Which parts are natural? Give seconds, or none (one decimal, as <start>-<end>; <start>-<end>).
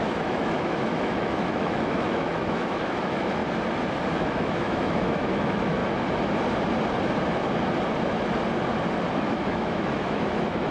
3.4-4.1; 5.8-9.1